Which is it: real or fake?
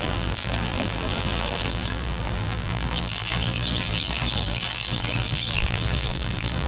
fake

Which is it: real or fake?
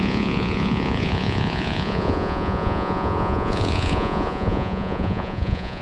fake